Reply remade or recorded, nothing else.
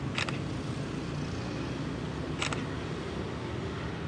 recorded